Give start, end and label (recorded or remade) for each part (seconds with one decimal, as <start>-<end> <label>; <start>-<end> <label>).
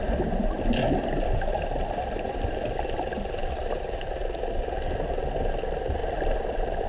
0.0-0.8 recorded; 0.8-4.5 remade; 4.5-6.0 recorded; 6.0-6.9 remade